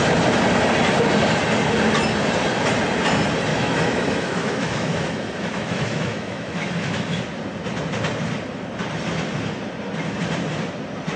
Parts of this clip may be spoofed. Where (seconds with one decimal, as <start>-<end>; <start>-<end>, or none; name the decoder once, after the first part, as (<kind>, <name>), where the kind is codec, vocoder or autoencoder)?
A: 3.5-7.2 (autoencoder, DAC-VAE)